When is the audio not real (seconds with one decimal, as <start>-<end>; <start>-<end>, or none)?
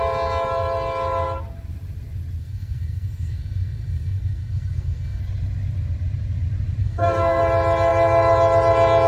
2.4-5.2; 6.8-7.4